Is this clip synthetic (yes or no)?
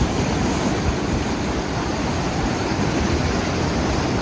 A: no